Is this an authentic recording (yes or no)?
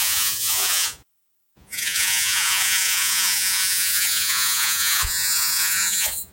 no